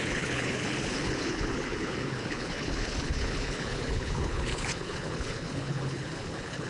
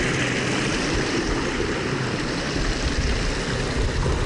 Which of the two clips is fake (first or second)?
first